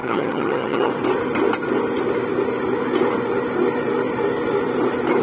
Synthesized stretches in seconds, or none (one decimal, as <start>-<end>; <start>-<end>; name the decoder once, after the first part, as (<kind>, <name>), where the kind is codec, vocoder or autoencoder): 0.0-0.9 (vocoder, HiFi-GAN)